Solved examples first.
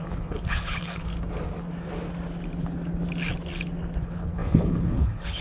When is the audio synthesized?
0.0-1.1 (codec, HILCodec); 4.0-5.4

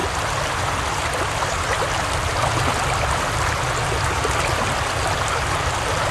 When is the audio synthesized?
none

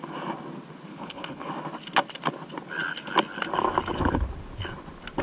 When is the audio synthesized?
0.9-1.5 (codec, HILCodec)

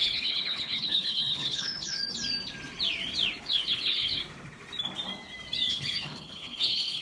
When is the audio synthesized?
0.0-2.0 (codec, HILCodec); 3.4-4.2; 5.7-7.0

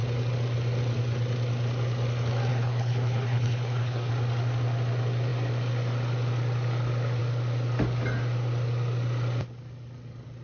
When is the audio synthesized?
2.5-4.1 (codec, HILCodec)